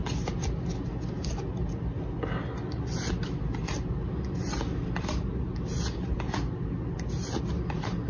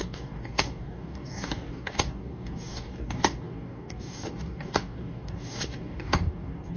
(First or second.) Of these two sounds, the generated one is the second